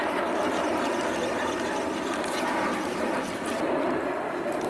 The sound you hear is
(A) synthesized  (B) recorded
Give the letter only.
B